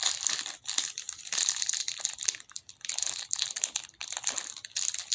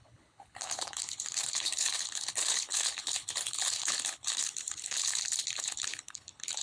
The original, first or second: first